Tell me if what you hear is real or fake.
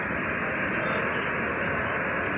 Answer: real